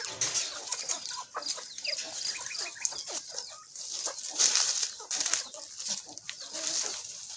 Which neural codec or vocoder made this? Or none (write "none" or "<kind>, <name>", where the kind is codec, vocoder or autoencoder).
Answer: none